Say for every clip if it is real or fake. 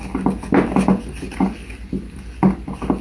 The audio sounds real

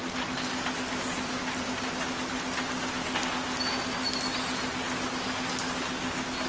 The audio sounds real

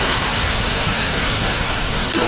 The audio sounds fake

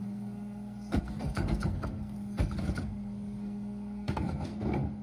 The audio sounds fake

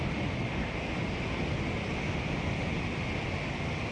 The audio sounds real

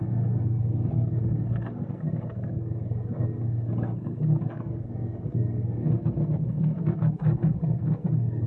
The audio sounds fake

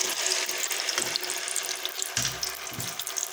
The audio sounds real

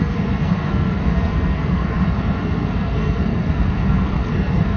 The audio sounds fake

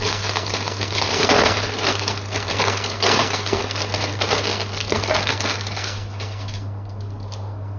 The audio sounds fake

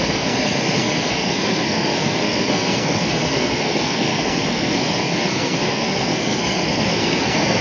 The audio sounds fake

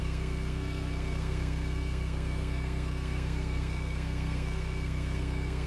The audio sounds fake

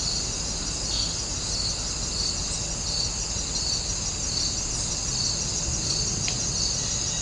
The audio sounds real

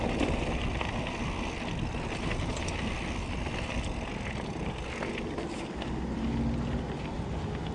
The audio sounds real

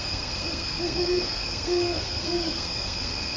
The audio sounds fake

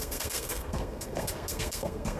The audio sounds fake